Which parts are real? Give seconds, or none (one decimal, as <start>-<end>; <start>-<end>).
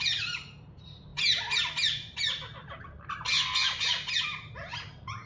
0.0-5.3